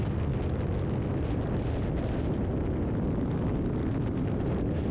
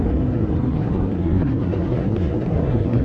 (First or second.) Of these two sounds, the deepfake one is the second